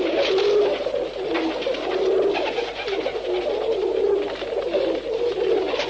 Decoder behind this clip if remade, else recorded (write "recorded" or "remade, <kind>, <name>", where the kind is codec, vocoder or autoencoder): recorded